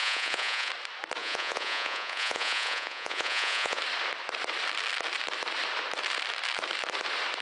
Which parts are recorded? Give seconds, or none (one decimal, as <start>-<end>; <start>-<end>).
0.7-1.2; 3.8-7.4